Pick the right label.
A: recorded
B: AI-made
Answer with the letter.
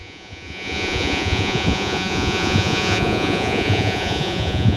B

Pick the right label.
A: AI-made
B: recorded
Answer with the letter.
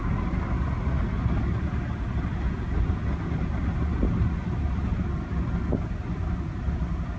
B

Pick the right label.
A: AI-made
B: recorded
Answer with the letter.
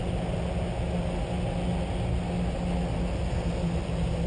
B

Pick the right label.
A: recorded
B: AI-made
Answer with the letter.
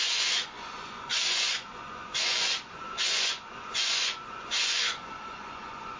B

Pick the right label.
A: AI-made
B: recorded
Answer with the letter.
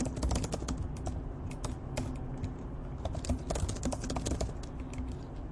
B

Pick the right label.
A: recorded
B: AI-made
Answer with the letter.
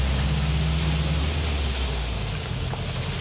A